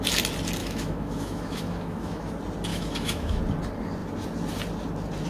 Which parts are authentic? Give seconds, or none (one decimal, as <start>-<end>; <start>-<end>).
0.0-0.6; 2.3-2.7; 3.4-5.3